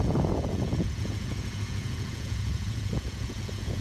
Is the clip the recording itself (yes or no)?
no